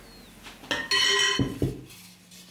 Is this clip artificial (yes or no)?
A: no